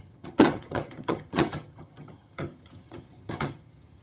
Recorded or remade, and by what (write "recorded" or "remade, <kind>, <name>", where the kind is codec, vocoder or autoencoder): remade, vocoder, HiFi-GAN